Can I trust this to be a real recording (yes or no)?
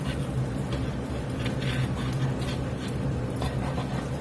yes